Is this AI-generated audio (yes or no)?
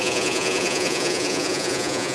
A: yes